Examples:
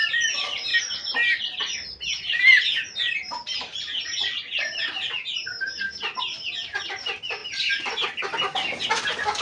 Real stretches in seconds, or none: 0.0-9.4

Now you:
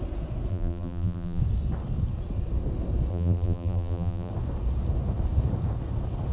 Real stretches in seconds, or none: 0.0-0.5; 1.4-3.1; 4.3-6.3

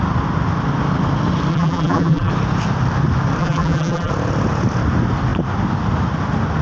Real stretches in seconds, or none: 0.0-1.5; 2.3-3.4; 4.1-6.6

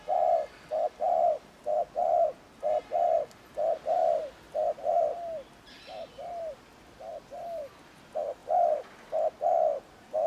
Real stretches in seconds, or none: 0.0-4.0; 4.9-8.4